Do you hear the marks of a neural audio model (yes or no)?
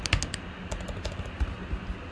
no